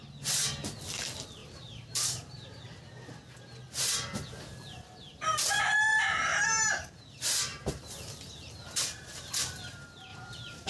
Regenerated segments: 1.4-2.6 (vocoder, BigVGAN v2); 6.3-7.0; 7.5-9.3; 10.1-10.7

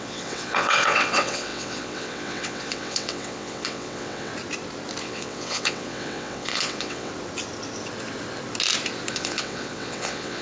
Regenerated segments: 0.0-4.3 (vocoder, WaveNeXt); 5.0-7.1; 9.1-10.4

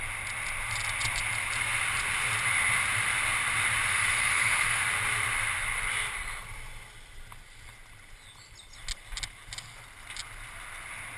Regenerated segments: 3.9-4.8 (autoencoder, DAC-VAE)